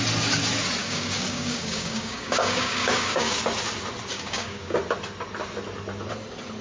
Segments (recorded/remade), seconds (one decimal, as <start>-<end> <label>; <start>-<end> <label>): 0.0-0.8 recorded; 0.8-3.4 remade; 3.4-4.1 recorded; 4.1-4.8 remade; 4.8-6.6 recorded